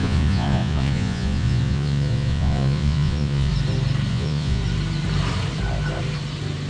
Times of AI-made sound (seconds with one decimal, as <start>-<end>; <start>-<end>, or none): 0.0-3.5; 4.1-4.6

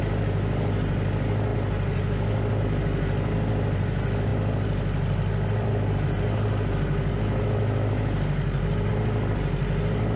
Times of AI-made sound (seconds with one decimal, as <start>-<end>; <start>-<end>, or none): none

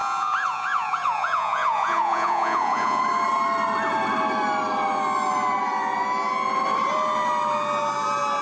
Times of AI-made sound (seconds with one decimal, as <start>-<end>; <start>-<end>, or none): 0.0-3.0

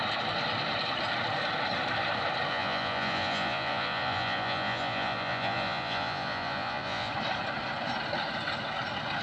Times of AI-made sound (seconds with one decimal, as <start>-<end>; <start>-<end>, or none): 2.5-7.1